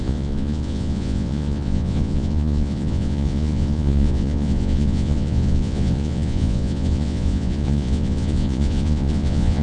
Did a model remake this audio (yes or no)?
yes